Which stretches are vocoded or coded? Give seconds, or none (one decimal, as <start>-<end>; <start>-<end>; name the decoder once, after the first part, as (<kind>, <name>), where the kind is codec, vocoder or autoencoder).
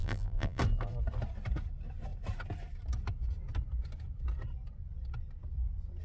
0.0-0.6 (vocoder, BigVGAN v2)